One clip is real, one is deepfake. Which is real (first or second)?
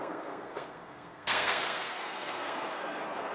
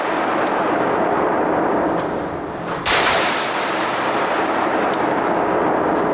second